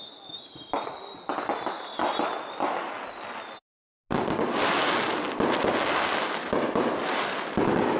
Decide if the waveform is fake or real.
real